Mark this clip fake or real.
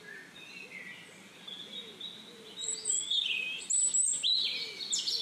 real